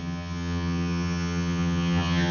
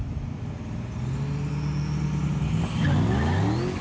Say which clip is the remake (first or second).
first